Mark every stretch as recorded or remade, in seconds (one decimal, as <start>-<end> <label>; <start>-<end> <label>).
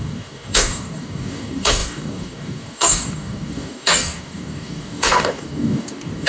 0.0-6.3 remade